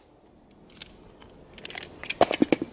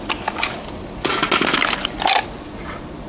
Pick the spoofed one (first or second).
second